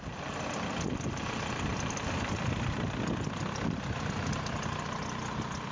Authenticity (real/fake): real